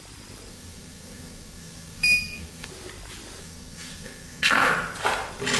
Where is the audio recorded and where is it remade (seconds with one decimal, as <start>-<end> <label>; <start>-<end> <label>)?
0.0-0.5 recorded; 0.5-2.7 remade; 2.7-3.4 recorded; 3.4-4.7 remade; 4.7-5.6 recorded